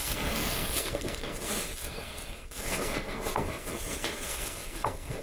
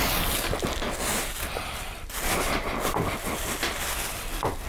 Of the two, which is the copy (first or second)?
first